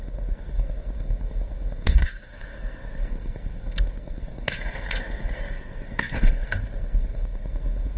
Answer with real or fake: fake